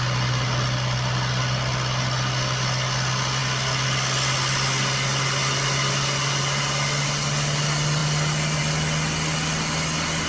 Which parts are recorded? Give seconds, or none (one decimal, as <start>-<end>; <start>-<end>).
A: 0.0-10.3